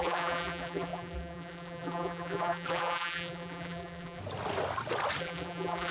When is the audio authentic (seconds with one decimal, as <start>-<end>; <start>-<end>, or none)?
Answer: 4.2-5.2